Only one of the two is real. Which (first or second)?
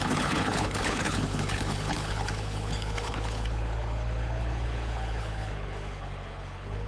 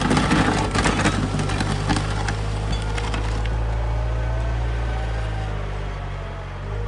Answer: second